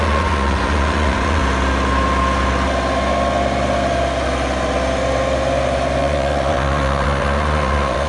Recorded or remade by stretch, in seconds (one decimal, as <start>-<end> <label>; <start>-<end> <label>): 0.0-1.4 remade; 1.4-6.0 recorded; 6.0-8.1 remade